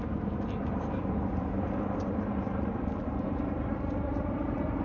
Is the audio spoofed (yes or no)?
yes